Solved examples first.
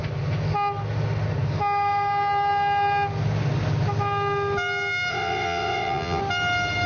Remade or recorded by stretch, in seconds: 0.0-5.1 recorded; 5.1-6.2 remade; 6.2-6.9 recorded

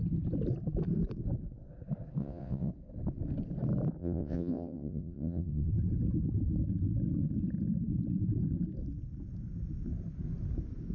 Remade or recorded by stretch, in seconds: 0.0-2.2 recorded; 2.2-2.7 remade; 2.7-4.0 recorded; 4.0-5.7 remade; 5.7-10.9 recorded

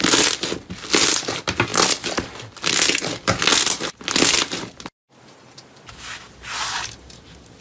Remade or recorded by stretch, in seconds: 0.0-7.6 recorded

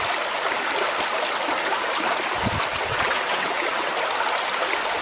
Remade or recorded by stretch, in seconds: 0.0-2.7 recorded; 2.7-3.9 remade; 3.9-5.0 recorded